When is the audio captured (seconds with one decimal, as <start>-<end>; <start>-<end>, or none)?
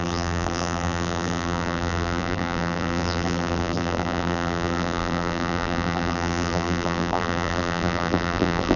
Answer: none